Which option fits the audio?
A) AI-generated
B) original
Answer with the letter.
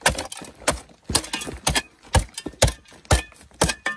B